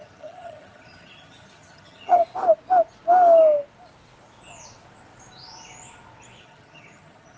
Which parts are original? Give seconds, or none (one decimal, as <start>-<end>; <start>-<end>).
2.2-6.4